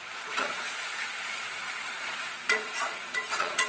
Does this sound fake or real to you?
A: fake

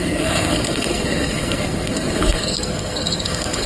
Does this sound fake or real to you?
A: fake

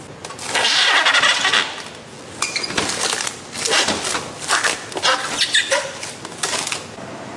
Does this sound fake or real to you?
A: real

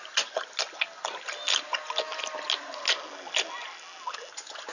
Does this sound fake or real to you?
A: real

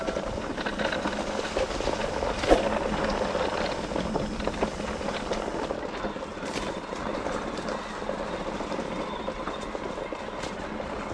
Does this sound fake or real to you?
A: real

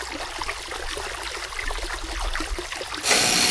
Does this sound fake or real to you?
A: real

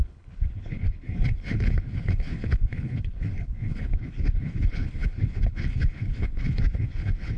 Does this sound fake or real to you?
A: fake